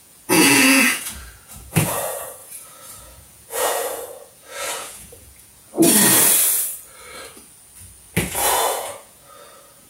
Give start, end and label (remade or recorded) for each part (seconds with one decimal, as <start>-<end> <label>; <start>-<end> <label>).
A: 0.0-5.7 remade; 5.7-8.3 recorded; 8.3-9.9 remade